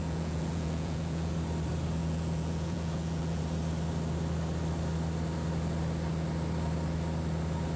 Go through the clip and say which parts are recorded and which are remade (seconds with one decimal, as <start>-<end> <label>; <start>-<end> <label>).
0.0-1.3 remade; 1.3-2.0 recorded; 2.0-3.4 remade; 3.4-7.8 recorded